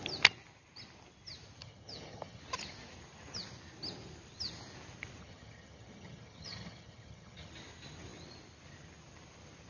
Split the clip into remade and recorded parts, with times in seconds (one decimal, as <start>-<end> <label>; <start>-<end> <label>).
0.0-1.6 recorded; 1.6-2.4 remade; 2.4-5.2 recorded; 5.2-7.5 remade; 7.5-9.7 recorded